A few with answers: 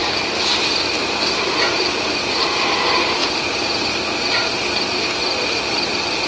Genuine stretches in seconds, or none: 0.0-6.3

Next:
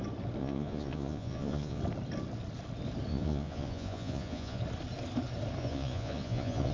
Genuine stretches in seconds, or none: 0.0-0.4; 1.8-3.1; 4.6-5.6

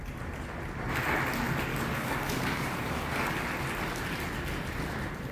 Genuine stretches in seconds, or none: 0.0-1.7; 3.4-5.3

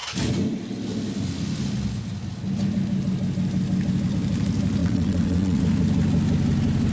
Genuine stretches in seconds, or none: 0.0-4.8; 5.6-6.9

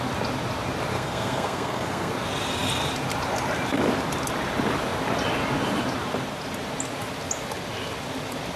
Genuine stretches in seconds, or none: 0.0-0.9; 2.1-8.6

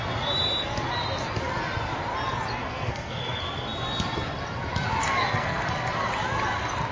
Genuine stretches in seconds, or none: 0.0-2.6; 3.4-5.0; 5.7-6.9

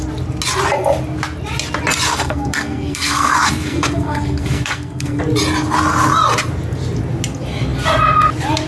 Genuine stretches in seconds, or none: 0.0-2.1; 5.2-8.7

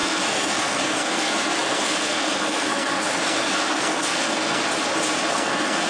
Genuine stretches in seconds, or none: 4.6-5.3